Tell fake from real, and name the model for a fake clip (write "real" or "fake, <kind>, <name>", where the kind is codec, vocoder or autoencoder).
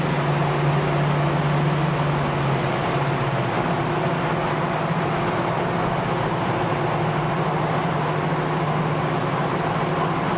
real